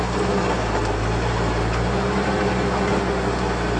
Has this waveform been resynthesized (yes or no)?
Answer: no